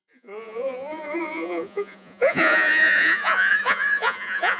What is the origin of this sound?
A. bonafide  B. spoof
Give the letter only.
B